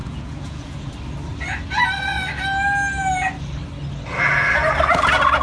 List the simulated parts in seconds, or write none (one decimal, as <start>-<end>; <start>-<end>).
0.0-0.9